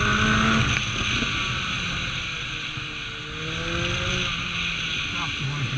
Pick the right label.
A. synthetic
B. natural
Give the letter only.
B